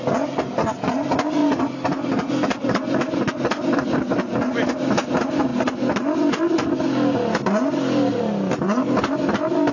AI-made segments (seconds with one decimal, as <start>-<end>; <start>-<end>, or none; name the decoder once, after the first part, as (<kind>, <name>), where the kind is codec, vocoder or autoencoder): none